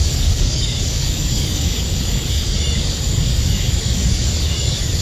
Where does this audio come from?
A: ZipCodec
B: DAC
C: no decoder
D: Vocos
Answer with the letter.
B